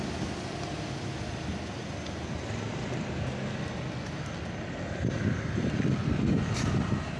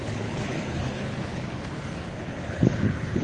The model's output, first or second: second